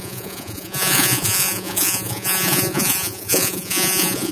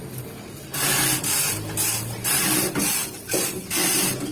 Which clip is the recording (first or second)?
second